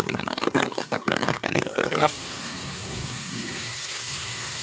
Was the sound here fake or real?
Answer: fake